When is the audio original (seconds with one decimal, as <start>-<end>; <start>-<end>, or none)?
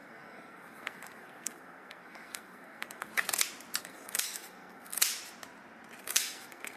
3.1-3.8; 5.0-6.0